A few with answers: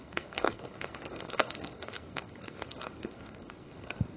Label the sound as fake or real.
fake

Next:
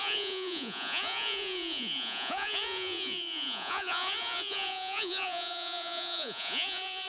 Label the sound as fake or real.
fake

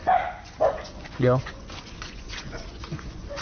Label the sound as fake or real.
fake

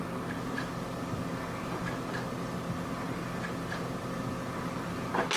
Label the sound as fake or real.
real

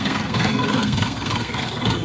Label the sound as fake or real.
fake